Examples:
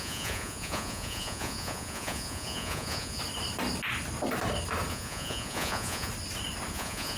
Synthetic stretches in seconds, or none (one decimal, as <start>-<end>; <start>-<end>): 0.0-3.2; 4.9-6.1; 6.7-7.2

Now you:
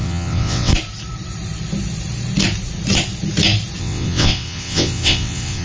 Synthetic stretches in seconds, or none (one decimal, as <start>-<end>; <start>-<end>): 0.0-0.7; 3.8-5.6

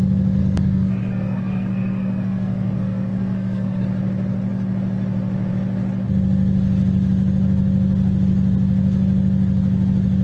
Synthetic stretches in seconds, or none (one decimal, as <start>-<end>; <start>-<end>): 0.4-3.8